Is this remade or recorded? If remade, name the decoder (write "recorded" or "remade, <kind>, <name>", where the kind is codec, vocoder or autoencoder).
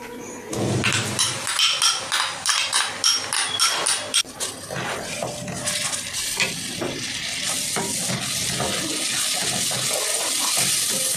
recorded